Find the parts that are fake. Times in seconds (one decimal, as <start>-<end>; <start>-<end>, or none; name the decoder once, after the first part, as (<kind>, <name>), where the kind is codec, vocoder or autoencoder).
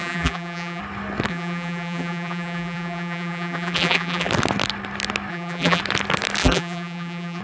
0.0-0.8 (vocoder, BigVGAN v2); 1.3-4.3; 5.3-5.8; 6.4-7.4